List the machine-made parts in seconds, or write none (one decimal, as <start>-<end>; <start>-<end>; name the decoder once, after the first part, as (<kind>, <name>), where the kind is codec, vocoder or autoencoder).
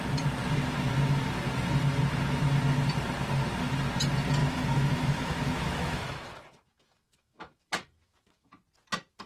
4.4-8.5 (autoencoder, DAC-VAE)